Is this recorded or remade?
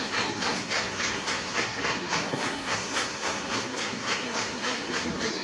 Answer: remade